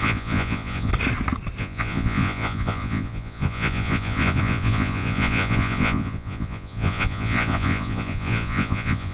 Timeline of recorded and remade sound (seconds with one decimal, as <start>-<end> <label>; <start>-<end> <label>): 0.0-0.9 remade; 0.9-1.6 recorded; 1.6-9.1 remade